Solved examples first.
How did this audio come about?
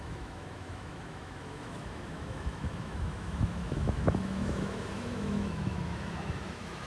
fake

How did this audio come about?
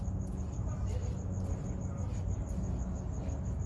real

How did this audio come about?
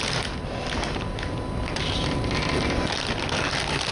real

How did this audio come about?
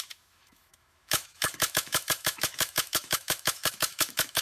fake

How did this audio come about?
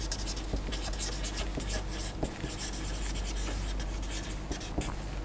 real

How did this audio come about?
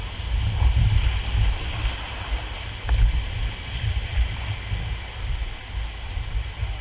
real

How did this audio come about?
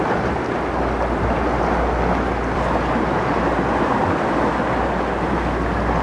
real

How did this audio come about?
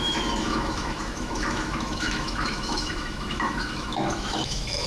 fake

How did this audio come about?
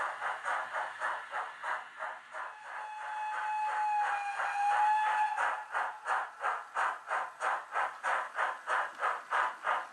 real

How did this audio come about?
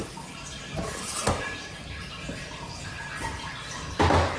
real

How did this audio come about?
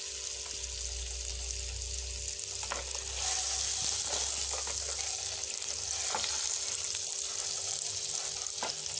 real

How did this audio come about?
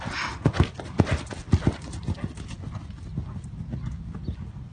real